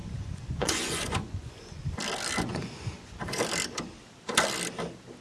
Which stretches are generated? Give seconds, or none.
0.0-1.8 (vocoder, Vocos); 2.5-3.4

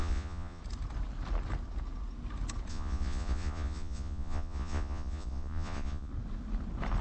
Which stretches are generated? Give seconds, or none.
0.0-0.6 (vocoder, Vocos); 2.7-6.1

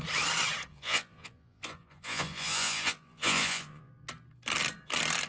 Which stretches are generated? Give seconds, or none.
0.7-3.9 (vocoder, Vocos)

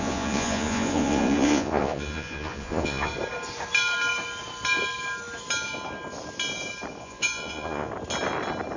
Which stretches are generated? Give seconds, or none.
0.0-3.1 (vocoder, Vocos); 7.0-7.9

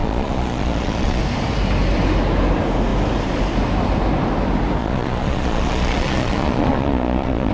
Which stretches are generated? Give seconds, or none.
0.0-1.2 (vocoder, Vocos); 4.8-7.5

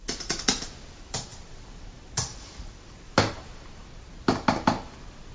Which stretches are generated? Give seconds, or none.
none